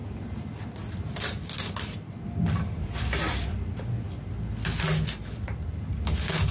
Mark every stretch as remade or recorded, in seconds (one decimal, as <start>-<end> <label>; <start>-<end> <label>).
0.0-3.9 remade; 3.9-6.5 recorded